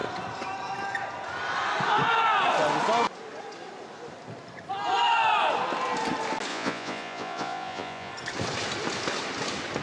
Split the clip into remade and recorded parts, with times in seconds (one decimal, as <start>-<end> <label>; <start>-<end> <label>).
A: 0.0-6.5 recorded; 6.5-8.1 remade; 8.1-9.8 recorded